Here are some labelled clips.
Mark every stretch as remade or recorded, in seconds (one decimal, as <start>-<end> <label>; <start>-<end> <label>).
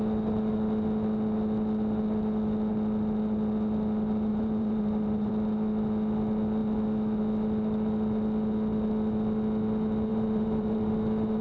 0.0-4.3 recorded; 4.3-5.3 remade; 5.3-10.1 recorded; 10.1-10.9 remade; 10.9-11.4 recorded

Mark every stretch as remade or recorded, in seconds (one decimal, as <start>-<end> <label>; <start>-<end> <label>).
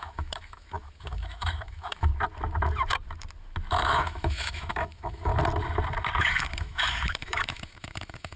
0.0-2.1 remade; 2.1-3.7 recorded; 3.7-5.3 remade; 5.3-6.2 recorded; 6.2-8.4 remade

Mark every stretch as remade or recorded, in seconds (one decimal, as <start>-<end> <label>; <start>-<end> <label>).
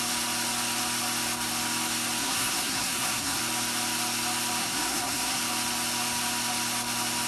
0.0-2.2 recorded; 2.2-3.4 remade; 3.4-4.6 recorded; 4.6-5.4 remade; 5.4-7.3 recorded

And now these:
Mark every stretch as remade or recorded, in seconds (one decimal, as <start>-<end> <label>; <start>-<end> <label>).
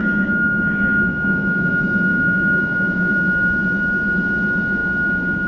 0.0-1.7 remade; 1.7-2.1 recorded; 2.1-3.1 remade; 3.1-5.5 recorded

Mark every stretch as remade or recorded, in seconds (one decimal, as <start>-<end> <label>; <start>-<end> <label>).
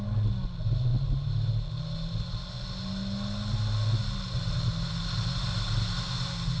0.0-6.6 recorded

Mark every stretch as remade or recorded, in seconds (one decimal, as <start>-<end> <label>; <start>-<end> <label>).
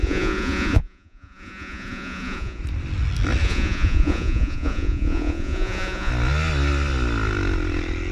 0.0-2.6 remade; 2.6-3.4 recorded; 3.4-6.1 remade; 6.1-8.1 recorded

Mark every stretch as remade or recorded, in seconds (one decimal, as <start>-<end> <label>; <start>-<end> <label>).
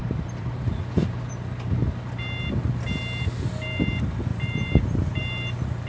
0.0-0.7 remade; 0.7-4.3 recorded; 4.3-5.2 remade; 5.2-5.9 recorded